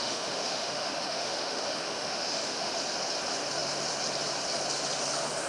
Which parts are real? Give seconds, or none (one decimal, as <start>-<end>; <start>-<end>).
2.7-5.5